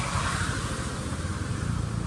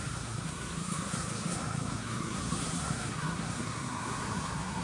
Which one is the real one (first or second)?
first